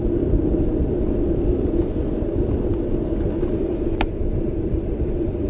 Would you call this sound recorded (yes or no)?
yes